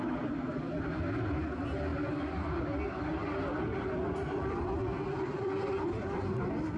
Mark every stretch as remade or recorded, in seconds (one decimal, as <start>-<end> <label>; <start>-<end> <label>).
0.0-6.8 recorded